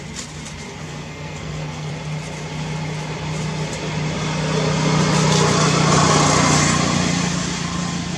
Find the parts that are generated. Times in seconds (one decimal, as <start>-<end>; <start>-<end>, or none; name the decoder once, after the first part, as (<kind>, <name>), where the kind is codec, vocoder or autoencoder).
0.8-1.9 (codec, SNAC)